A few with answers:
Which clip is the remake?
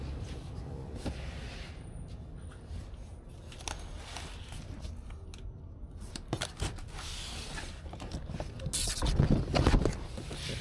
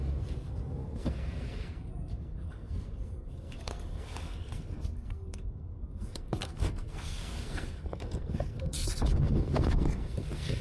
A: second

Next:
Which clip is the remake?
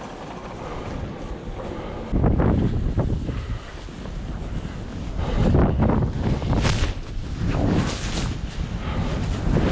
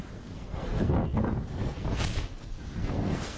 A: second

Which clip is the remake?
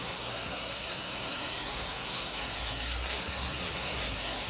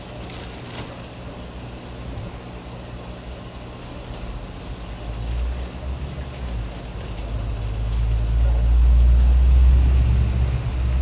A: first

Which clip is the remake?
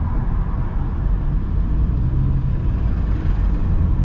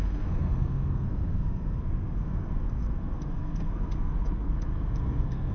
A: second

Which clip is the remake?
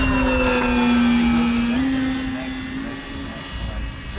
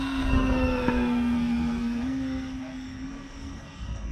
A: second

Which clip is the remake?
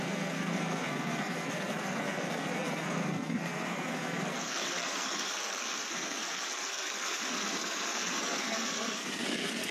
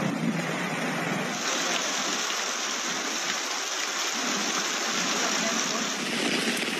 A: first